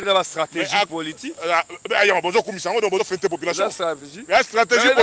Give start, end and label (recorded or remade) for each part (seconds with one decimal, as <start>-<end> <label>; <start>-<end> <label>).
0.0-3.0 remade; 3.0-5.0 recorded